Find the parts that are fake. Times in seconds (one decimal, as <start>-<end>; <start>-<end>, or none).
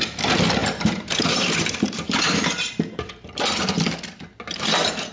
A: 0.6-3.7